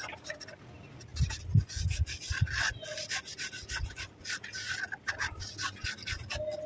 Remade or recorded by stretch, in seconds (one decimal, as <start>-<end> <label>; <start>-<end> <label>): 0.0-6.7 recorded